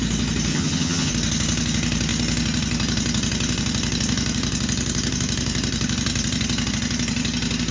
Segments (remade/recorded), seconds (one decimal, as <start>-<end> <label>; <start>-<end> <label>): 0.0-0.5 recorded; 0.5-1.1 remade; 1.1-7.7 recorded